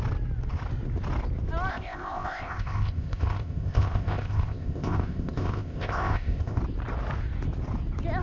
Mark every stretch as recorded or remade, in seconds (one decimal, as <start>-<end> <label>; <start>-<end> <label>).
0.0-1.7 recorded; 1.7-6.6 remade; 6.6-8.2 recorded